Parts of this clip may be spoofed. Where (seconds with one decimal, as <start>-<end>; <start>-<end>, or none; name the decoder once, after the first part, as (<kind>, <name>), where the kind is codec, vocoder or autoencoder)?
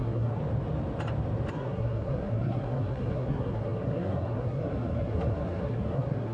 0.0-0.4 (codec, SNAC); 1.5-6.3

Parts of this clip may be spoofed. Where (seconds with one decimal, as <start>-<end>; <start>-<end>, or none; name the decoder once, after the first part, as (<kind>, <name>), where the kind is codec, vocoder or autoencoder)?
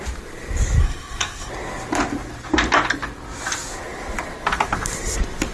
0.8-1.5 (codec, SNAC)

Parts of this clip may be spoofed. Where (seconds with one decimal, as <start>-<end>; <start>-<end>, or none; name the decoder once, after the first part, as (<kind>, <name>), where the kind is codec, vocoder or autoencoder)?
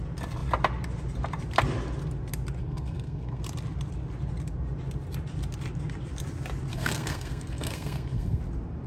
2.6-3.4 (codec, SNAC); 6.7-8.4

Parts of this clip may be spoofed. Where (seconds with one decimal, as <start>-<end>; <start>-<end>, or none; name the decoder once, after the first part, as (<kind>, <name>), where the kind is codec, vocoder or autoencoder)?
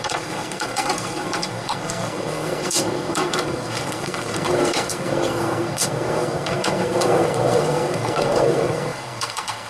0.0-9.7 (codec, SNAC)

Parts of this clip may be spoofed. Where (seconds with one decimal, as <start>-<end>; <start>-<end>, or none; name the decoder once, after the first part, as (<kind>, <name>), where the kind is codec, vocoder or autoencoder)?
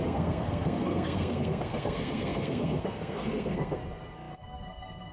0.0-3.8 (codec, SNAC); 4.3-5.1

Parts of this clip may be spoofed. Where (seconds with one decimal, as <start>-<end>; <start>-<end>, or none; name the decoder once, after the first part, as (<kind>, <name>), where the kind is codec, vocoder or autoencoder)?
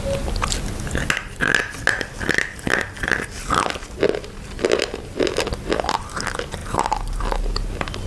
none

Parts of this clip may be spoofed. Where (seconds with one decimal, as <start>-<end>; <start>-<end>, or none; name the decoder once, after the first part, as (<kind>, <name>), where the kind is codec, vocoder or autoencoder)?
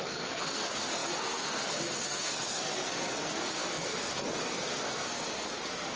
0.0-6.0 (codec, SNAC)